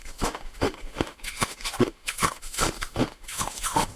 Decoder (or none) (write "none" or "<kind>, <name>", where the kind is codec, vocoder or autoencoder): autoencoder, DAC-VAE